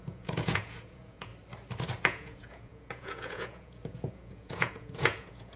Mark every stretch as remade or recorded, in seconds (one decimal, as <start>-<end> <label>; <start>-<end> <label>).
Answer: 0.0-1.3 remade; 1.3-2.0 recorded; 2.0-5.6 remade